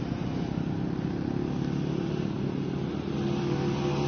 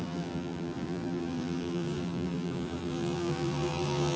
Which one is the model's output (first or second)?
second